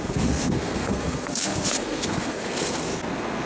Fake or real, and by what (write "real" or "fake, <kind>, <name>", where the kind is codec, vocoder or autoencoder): fake, codec, SNAC